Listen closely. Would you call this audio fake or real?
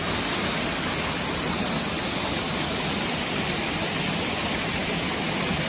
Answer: real